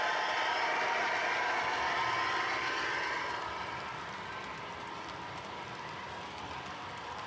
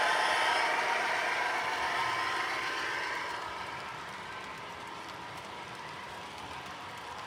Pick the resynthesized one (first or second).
second